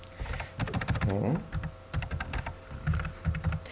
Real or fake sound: real